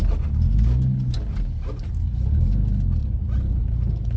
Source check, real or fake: real